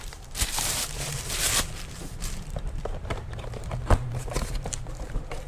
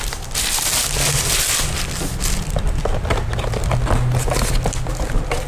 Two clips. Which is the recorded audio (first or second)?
second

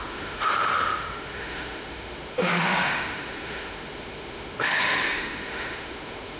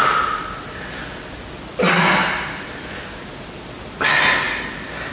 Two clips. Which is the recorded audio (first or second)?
second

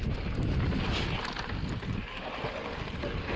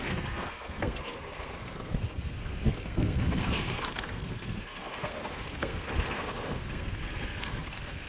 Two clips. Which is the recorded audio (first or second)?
first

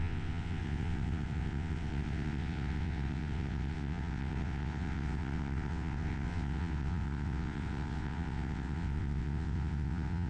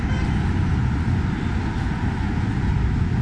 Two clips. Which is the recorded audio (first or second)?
second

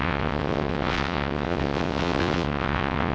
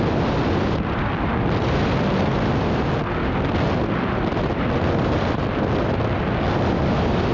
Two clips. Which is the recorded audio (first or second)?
second